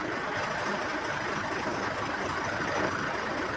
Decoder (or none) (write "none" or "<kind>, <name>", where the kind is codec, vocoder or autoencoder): vocoder, BigVGAN v2